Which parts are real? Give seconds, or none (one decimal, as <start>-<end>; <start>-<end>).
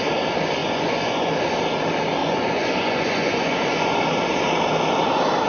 0.0-0.6; 1.3-2.2; 4.0-5.5